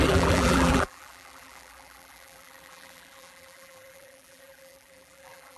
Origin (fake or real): fake